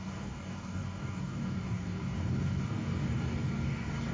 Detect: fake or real fake